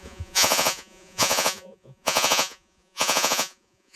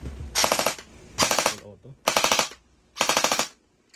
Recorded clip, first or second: second